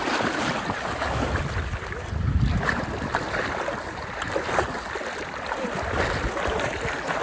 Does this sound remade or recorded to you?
recorded